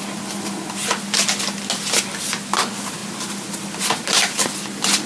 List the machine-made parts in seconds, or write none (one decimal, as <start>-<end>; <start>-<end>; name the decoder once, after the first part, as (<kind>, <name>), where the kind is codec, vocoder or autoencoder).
none